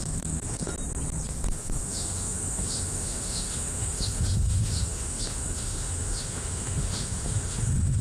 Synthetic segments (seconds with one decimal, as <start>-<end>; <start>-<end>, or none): 0.0-0.7; 1.3-8.0